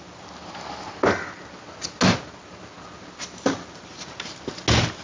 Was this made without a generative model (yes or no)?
yes